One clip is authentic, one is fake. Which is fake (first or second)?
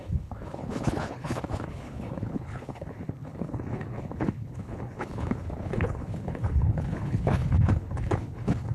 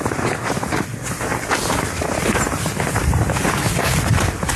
first